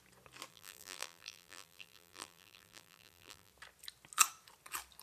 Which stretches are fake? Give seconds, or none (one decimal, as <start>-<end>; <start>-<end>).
0.5-3.5